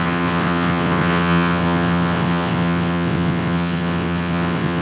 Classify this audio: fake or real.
fake